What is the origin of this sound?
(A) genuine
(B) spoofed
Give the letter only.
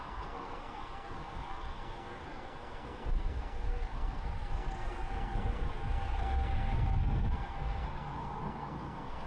B